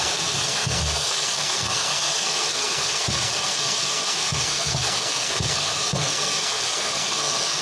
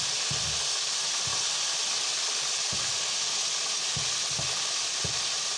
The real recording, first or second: second